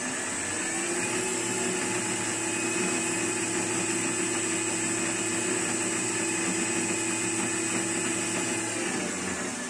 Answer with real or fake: real